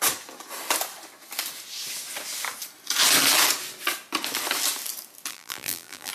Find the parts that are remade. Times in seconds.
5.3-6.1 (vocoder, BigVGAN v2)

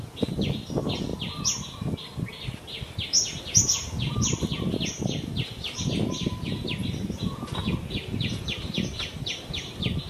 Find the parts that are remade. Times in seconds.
0.0-1.1 (vocoder, BigVGAN v2); 3.4-10.1

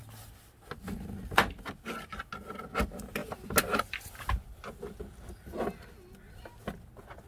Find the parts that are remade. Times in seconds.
none

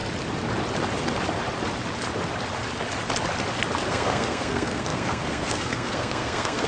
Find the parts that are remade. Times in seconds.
3.9-6.7 (codec, SNAC)

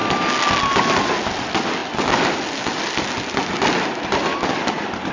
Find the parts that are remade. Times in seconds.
none

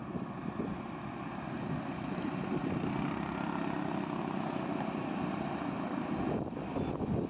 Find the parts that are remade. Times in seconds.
none